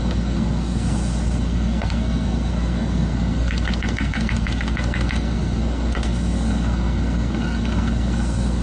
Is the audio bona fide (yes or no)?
no